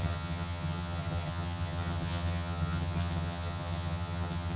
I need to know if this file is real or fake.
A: fake